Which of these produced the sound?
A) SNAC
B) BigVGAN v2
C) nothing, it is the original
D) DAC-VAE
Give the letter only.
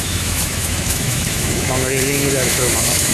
D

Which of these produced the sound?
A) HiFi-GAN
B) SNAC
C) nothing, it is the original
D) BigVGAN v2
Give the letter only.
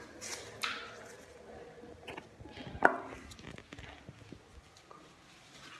C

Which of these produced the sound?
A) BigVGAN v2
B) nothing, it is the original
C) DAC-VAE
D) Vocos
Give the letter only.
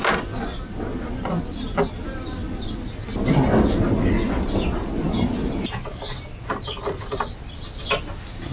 B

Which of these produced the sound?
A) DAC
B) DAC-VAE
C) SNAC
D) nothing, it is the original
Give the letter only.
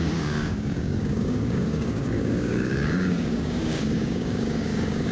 A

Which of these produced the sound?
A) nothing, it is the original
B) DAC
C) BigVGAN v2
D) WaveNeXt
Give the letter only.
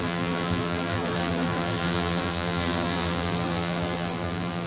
C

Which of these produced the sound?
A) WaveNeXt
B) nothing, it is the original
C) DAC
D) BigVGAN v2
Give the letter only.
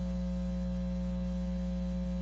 B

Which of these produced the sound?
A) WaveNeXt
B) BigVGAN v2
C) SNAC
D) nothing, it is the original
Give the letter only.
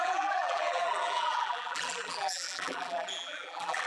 B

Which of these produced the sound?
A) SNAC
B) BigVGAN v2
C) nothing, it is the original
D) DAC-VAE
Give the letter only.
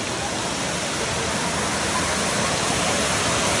C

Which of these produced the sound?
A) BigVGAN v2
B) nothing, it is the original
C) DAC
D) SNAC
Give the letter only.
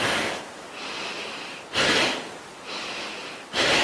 B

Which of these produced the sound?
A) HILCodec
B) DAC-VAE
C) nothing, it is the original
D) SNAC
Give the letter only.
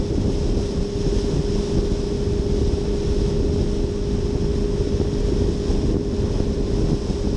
C